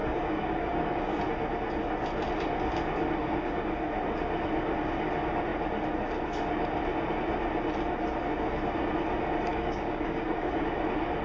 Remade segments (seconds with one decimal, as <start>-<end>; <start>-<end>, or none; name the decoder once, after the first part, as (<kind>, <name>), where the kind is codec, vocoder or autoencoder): 0.0-1.2 (codec, DAC); 3.2-3.7; 9.5-10.7